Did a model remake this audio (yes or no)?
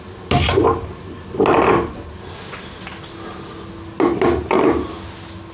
no